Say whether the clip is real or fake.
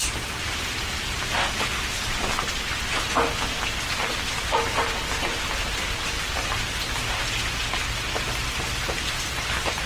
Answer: real